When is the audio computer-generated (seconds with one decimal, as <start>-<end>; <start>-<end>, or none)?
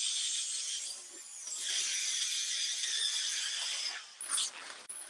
1.4-4.5